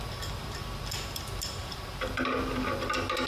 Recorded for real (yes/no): yes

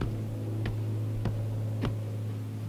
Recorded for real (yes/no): yes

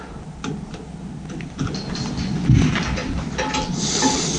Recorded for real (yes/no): yes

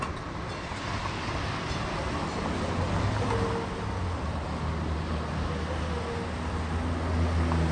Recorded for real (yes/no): yes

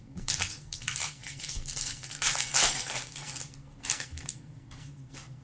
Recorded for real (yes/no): no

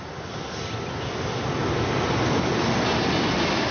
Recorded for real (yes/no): yes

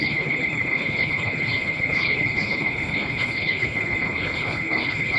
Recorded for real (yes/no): no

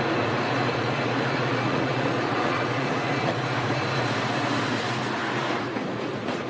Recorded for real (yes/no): no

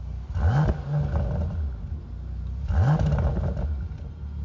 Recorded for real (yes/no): yes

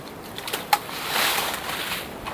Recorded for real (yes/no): no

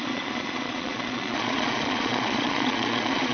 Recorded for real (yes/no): no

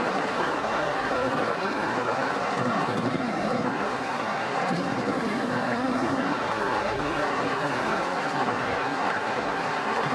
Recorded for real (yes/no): no